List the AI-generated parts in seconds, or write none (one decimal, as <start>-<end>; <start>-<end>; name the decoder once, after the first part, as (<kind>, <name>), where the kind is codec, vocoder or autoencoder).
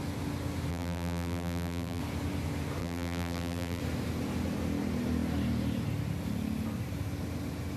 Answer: 0.7-2.0 (vocoder, BigVGAN v2); 2.8-3.8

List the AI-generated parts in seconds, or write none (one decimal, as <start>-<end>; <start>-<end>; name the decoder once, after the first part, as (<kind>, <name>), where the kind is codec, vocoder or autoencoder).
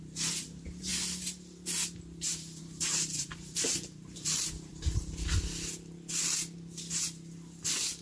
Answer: 0.0-0.9 (vocoder, BigVGAN v2); 2.6-4.7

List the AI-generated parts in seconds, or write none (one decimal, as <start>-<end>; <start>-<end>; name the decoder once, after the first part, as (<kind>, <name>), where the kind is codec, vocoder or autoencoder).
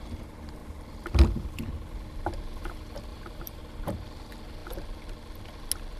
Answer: 3.1-3.6 (vocoder, BigVGAN v2)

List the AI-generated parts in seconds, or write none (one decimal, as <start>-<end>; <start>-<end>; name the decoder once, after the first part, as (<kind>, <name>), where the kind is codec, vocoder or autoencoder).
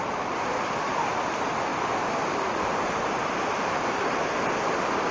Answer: none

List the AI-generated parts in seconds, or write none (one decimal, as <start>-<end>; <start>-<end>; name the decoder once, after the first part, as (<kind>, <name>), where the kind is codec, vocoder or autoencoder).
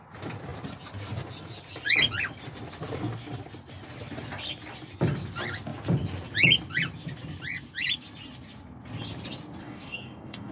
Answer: 9.6-10.5 (codec, DAC)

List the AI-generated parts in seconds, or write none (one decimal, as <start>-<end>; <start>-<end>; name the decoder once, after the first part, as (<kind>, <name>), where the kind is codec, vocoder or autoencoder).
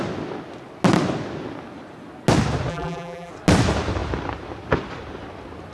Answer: 2.7-3.3 (vocoder, BigVGAN v2)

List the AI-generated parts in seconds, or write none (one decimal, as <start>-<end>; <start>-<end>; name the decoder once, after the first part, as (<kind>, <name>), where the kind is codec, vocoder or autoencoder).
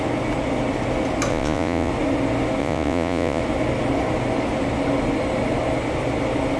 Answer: 1.3-1.9 (vocoder, Vocos); 2.6-3.4